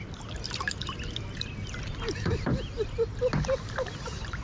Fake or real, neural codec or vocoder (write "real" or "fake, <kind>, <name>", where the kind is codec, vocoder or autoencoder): real